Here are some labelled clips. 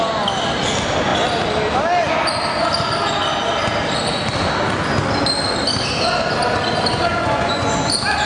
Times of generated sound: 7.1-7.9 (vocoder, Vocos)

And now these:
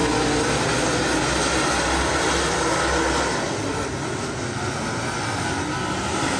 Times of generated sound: none

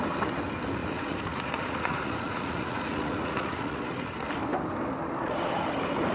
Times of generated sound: 0.8-4.1 (vocoder, Vocos)

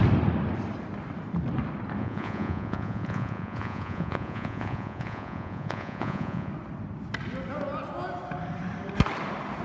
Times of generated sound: 2.0-6.5 (vocoder, Vocos)

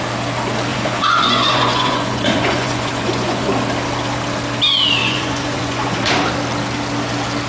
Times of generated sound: 0.7-3.5 (vocoder, Vocos); 5.0-6.1

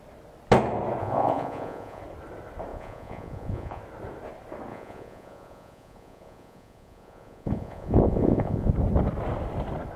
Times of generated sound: 1.0-2.0 (vocoder, Vocos); 2.7-3.8; 4.7-8.7

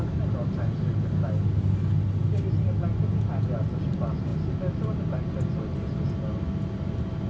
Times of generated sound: none